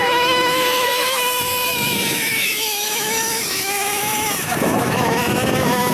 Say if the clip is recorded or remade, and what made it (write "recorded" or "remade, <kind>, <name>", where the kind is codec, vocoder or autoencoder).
remade, autoencoder, DAC-VAE